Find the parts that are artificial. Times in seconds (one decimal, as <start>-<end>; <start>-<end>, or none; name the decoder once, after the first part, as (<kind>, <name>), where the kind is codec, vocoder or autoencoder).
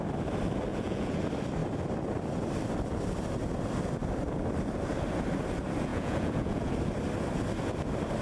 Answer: 0.7-1.2 (vocoder, Vocos); 5.9-6.7